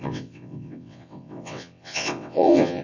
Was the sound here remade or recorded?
remade